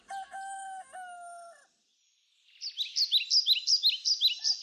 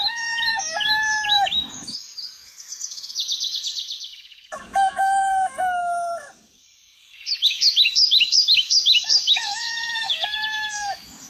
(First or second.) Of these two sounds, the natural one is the first